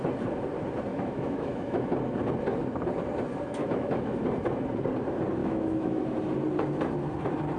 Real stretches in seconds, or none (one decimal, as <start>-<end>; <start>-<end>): 0.0-0.9; 1.9-3.6; 4.2-5.4; 6.0-7.6